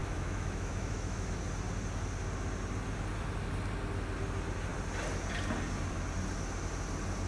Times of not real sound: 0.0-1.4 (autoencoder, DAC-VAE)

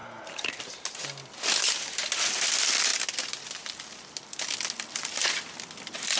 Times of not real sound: none